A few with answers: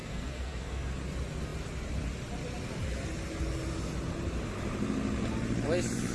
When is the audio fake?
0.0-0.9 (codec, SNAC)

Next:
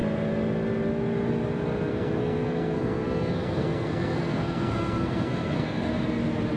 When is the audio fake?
1.9-5.9 (codec, SNAC)

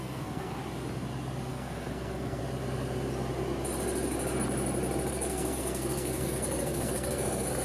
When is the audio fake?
0.0-0.6 (codec, SNAC); 1.5-2.4; 5.1-7.6

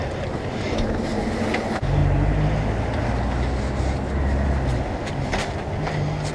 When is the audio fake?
none

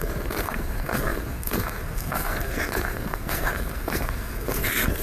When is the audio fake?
0.0-5.0 (codec, SNAC)

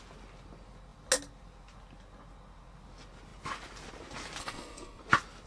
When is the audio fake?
4.4-5.0 (codec, SNAC)

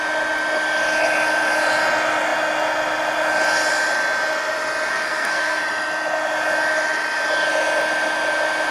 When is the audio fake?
4.9-5.6 (codec, SNAC)

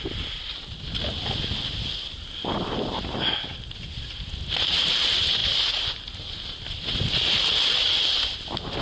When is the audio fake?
none